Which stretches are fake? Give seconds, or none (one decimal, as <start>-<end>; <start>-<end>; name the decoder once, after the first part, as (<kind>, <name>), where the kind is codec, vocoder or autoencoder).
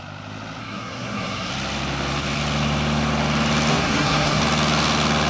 0.6-1.5 (codec, SNAC); 3.7-4.4